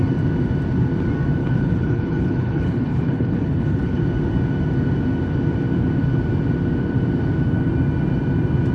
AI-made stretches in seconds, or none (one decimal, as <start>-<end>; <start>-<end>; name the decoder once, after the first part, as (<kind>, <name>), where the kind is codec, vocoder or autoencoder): 1.4-4.0 (codec, HILCodec)